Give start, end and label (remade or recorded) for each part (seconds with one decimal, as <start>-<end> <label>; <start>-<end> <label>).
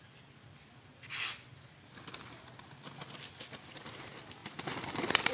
0.0-4.4 recorded; 4.4-5.3 remade